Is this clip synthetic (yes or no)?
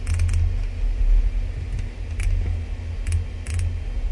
no